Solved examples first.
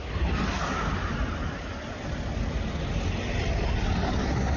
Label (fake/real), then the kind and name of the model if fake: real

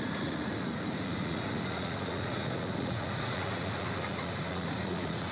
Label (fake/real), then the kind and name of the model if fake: fake, vocoder, Vocos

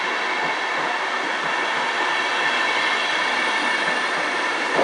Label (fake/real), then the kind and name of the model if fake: real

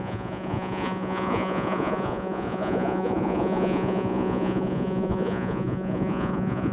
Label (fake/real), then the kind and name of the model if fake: fake, vocoder, Vocos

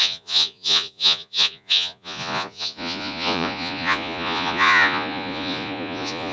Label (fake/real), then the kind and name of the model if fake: fake, vocoder, Vocos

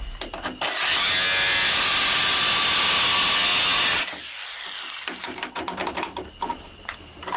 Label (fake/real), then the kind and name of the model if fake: real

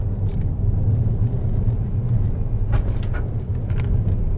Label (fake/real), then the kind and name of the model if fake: real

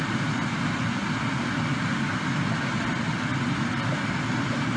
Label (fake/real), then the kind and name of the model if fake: real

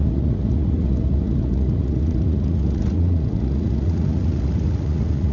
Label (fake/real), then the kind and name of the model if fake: fake, vocoder, Vocos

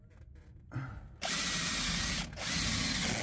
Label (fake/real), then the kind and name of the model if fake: real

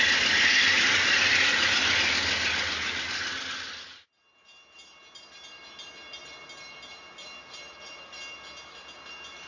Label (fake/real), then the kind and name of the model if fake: real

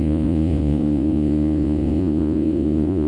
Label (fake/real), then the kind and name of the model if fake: fake, vocoder, Vocos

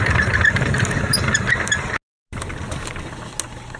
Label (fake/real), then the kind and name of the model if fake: real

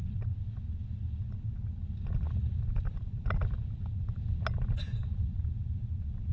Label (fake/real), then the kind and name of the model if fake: real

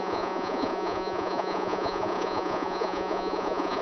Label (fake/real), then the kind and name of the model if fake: fake, vocoder, Vocos